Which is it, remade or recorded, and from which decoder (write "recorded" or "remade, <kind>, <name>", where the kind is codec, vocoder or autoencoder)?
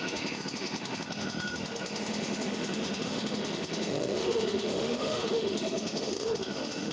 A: remade, autoencoder, DAC-VAE